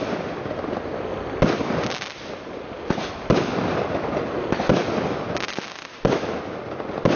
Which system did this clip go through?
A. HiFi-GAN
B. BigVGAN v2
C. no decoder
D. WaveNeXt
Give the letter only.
C